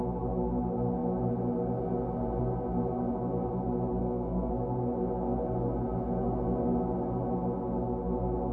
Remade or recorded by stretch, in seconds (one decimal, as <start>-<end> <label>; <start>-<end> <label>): 0.0-4.0 recorded; 4.0-4.5 remade; 4.5-8.5 recorded